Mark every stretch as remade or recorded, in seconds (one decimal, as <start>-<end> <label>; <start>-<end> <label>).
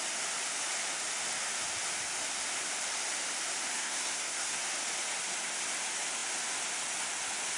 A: 0.0-3.7 recorded; 3.7-4.6 remade; 4.6-7.6 recorded